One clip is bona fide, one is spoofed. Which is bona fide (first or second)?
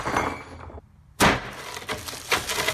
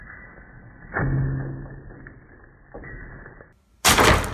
second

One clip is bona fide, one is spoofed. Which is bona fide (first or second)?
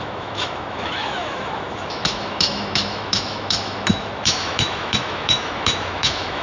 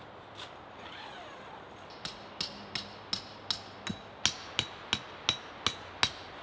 second